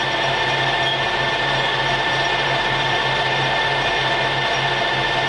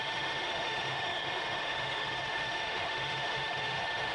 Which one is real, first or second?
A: first